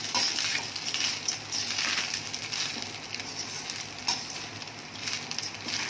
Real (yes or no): yes